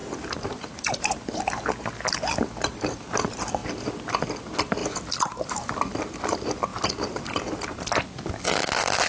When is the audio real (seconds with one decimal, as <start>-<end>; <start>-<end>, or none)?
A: 1.4-4.8; 5.7-9.1